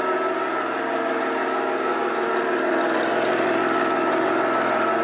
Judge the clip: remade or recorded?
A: recorded